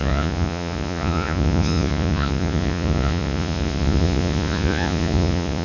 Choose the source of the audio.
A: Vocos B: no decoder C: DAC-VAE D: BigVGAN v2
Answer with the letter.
A